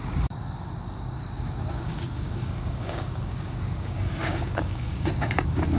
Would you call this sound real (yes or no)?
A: no